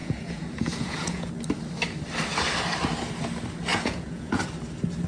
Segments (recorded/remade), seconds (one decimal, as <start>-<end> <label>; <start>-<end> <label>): 0.0-1.3 remade; 1.3-3.7 recorded; 3.7-4.4 remade; 4.4-5.1 recorded